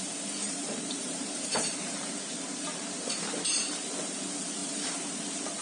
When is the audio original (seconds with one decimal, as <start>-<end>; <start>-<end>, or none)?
0.0-0.4; 3.8-4.6